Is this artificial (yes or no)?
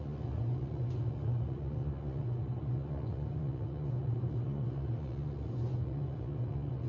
yes